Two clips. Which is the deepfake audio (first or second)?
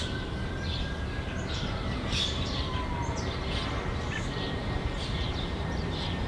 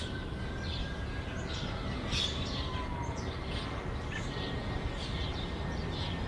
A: first